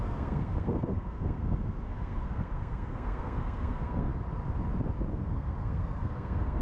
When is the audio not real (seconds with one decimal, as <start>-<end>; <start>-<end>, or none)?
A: 0.0-4.1; 5.1-6.6